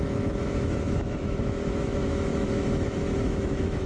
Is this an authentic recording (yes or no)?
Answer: no